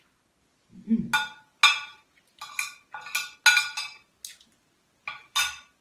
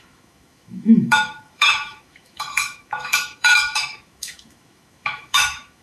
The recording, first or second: first